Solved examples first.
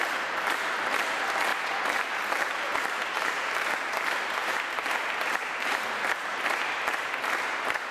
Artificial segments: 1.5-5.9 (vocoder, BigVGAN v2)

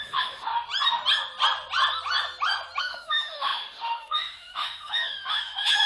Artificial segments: 0.0-0.5 (autoencoder, DAC-VAE); 2.8-5.9

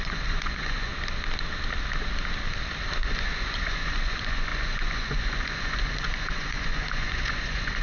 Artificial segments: 0.0-0.9 (vocoder, Vocos); 3.1-7.8

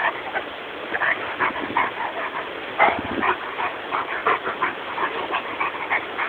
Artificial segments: none

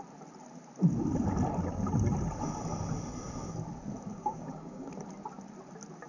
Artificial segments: 4.1-4.9 (codec, DAC)